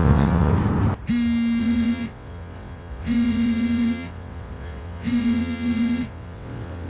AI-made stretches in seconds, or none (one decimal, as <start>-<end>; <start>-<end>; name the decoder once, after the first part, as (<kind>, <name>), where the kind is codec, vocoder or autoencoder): 0.0-0.5 (vocoder, WaveNeXt); 1.6-6.9